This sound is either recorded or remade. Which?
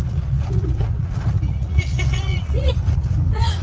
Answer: remade